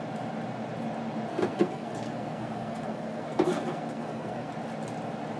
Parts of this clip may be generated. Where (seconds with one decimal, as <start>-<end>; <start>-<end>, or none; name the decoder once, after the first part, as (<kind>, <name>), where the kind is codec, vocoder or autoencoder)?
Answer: 1.3-4.5 (codec, SNAC)